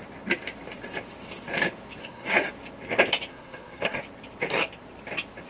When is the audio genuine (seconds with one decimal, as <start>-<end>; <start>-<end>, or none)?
0.0-2.0; 2.5-3.3; 4.0-5.5